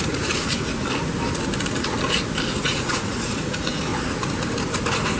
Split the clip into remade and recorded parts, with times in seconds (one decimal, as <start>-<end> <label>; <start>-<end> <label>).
0.0-0.4 remade; 0.4-2.6 recorded; 2.6-3.9 remade; 3.9-5.2 recorded